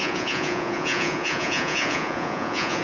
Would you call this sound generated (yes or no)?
yes